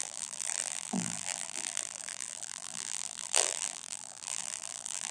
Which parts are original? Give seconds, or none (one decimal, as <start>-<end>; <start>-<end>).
none